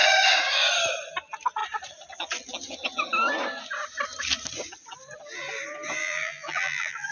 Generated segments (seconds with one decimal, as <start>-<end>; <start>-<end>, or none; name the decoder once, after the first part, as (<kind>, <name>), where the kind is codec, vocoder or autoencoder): 6.0-7.1 (vocoder, BigVGAN v2)

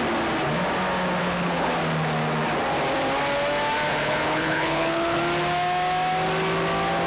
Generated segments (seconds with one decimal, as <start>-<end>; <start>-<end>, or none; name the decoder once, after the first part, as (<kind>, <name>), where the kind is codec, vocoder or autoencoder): 1.2-1.7 (codec, HILCodec); 3.9-5.2

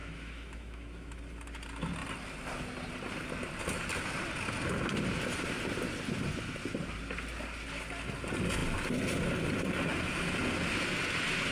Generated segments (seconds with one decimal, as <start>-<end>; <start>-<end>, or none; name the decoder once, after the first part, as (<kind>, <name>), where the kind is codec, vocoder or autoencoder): 0.0-1.2 (autoencoder, DAC-VAE)

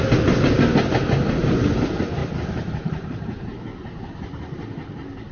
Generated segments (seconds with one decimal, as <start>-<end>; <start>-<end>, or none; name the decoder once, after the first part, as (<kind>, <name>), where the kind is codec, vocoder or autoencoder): 2.2-5.3 (vocoder, BigVGAN v2)

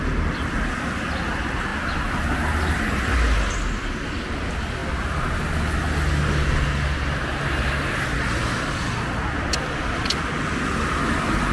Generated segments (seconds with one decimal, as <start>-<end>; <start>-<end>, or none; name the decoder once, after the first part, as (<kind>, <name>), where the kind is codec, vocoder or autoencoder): none

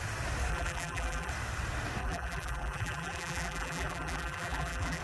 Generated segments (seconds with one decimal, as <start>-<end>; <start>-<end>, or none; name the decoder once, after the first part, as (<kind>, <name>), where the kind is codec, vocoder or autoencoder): 0.5-1.3 (vocoder, BigVGAN v2); 2.0-5.0

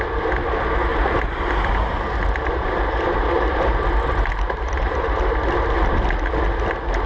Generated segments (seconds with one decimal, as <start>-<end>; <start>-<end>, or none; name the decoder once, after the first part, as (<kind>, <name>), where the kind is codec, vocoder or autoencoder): 0.9-5.2 (vocoder, BigVGAN v2)